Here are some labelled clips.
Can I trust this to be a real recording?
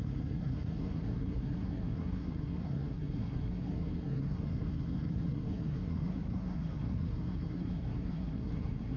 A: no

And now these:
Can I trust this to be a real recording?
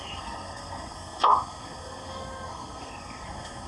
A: no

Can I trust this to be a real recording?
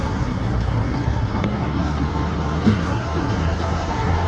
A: no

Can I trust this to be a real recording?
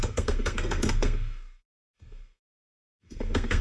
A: no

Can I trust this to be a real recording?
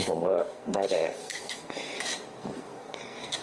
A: no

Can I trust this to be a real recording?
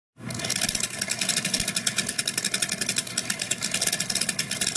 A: yes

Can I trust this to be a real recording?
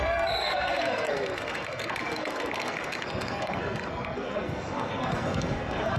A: no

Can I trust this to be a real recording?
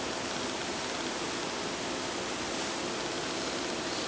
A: yes